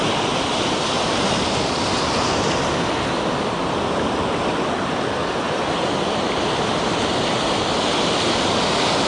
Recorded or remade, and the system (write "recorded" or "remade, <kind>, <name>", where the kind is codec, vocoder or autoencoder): recorded